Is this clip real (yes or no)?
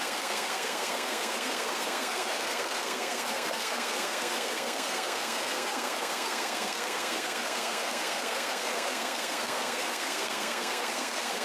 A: no